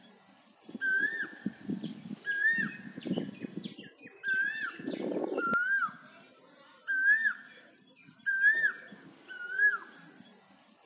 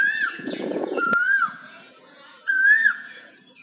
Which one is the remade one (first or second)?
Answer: second